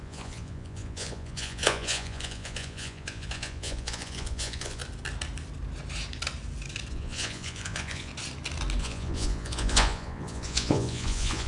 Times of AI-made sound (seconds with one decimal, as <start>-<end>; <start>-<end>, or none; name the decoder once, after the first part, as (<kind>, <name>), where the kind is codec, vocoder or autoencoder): 0.0-4.8 (vocoder, Vocos); 6.9-8.1; 8.8-11.5

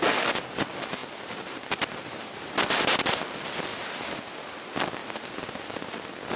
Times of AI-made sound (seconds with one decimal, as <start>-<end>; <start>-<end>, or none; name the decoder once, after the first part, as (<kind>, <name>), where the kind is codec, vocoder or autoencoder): 1.0-3.2 (vocoder, BigVGAN v2); 3.7-4.2

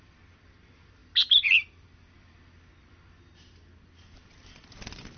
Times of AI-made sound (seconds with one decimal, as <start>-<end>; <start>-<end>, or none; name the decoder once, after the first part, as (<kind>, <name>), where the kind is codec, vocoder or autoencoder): none

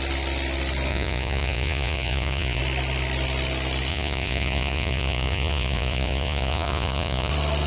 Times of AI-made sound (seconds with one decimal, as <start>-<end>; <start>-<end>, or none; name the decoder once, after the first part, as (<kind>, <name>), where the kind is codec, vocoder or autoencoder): 0.9-2.6 (vocoder, Vocos); 3.9-7.3